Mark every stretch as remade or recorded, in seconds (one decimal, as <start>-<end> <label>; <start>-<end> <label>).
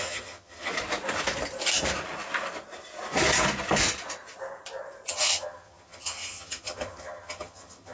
0.0-0.7 remade; 0.7-5.1 recorded; 5.1-7.9 remade